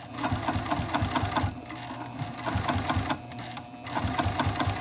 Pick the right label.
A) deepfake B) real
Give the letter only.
B